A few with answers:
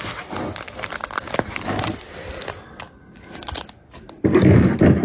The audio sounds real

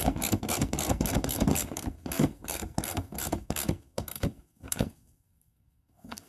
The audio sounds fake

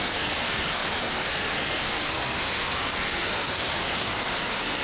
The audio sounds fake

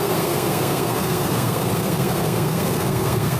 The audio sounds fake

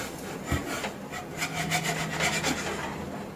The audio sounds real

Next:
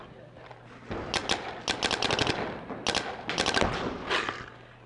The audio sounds real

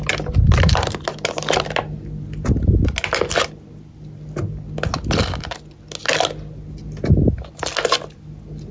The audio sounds real